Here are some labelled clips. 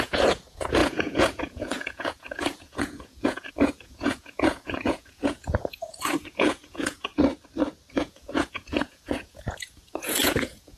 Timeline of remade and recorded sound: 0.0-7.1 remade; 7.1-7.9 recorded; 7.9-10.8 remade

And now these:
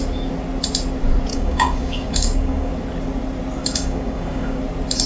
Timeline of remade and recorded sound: 0.0-1.3 recorded; 1.3-2.7 remade; 2.7-3.6 recorded; 3.6-4.6 remade; 4.6-5.1 recorded

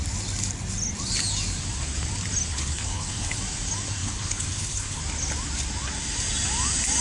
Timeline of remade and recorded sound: 0.0-2.5 recorded; 2.5-3.4 remade; 3.4-4.0 recorded; 4.0-5.0 remade; 5.0-7.0 recorded

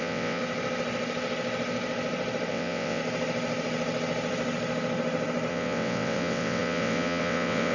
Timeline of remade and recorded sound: 0.0-0.4 remade; 0.4-2.5 recorded; 2.5-3.0 remade; 3.0-5.5 recorded; 5.5-7.7 remade

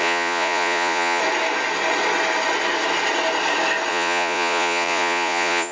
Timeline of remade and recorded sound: 0.0-1.2 remade; 1.2-3.9 recorded; 3.9-5.7 remade